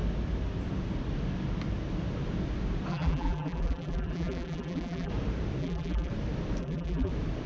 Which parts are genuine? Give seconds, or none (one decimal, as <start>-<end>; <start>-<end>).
0.0-2.9; 5.1-5.6; 6.1-6.6; 7.1-7.5